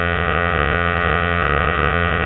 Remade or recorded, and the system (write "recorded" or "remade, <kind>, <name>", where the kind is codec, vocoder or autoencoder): remade, vocoder, WaveNeXt